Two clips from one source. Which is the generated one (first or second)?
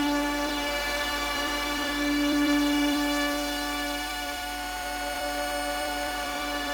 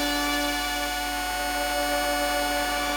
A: first